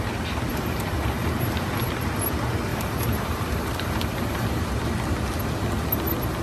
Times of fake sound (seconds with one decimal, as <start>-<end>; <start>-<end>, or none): 0.5-1.7; 2.7-4.6